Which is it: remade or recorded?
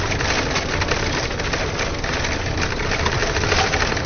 recorded